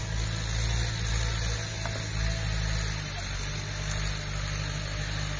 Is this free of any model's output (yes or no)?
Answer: yes